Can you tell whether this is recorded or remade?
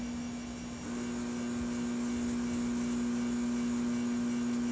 recorded